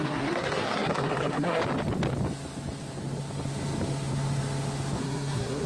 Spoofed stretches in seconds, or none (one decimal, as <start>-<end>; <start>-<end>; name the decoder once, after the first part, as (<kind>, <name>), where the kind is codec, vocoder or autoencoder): 0.0-1.6 (codec, SNAC); 5.0-5.7